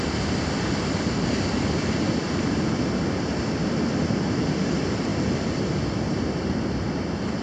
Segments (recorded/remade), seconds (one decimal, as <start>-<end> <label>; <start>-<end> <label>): 0.0-7.4 recorded